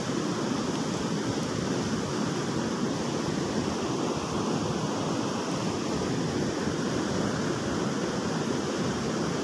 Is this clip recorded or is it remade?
recorded